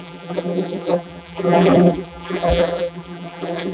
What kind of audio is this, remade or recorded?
remade